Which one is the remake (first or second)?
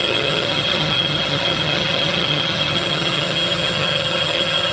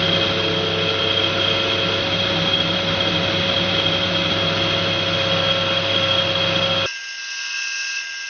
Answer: first